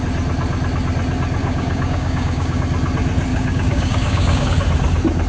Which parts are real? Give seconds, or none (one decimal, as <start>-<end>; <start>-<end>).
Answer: 0.0-1.4; 2.6-3.3; 4.5-5.3